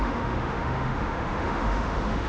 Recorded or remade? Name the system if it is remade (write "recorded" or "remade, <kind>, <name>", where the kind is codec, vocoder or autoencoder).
remade, autoencoder, DAC-VAE